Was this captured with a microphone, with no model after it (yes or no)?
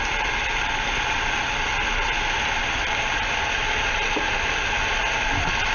yes